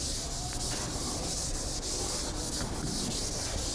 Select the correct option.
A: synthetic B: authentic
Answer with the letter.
B